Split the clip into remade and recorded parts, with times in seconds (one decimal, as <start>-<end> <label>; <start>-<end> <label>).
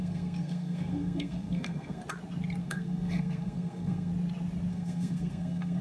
0.0-2.0 remade; 2.0-2.6 recorded; 2.6-4.1 remade; 4.1-4.7 recorded; 4.7-5.8 remade